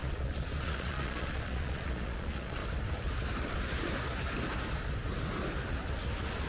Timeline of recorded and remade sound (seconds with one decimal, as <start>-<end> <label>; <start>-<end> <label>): 0.0-2.6 remade; 2.6-6.5 recorded